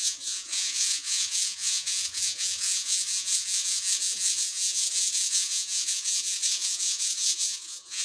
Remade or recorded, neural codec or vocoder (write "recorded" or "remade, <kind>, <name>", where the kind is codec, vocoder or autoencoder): remade, vocoder, Vocos